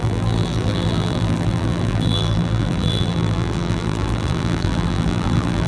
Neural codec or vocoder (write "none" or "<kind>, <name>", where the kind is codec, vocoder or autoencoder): vocoder, BigVGAN v2